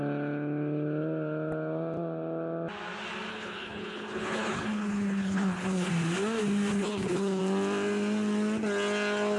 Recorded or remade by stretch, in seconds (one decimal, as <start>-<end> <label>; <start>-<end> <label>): 0.0-3.3 recorded; 3.3-5.9 remade; 5.9-6.7 recorded; 6.7-7.4 remade; 7.4-9.4 recorded